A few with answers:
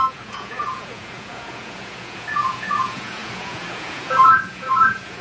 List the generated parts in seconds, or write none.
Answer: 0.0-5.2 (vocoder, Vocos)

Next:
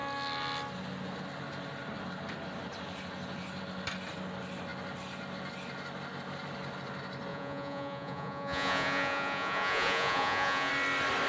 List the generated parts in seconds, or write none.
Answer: 7.3-10.7 (vocoder, Vocos)